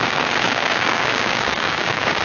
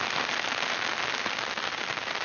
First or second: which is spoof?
first